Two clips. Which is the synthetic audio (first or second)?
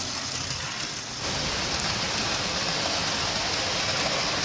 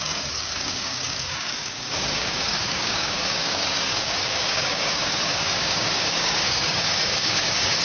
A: second